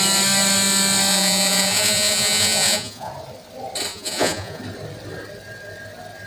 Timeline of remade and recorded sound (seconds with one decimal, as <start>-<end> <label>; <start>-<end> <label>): 0.0-1.1 recorded; 1.1-3.1 remade; 3.1-3.9 recorded; 3.9-4.6 remade; 4.6-6.3 recorded